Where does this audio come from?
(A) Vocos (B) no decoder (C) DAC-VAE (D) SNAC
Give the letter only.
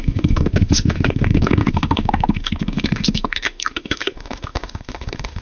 C